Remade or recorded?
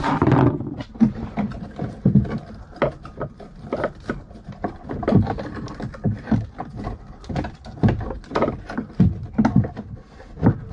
recorded